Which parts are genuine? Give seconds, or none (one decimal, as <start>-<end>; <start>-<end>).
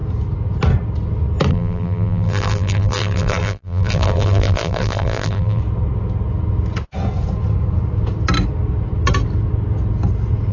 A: 0.0-1.5; 5.6-10.5